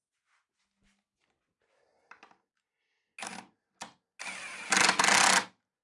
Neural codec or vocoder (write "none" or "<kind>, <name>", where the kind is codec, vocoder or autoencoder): none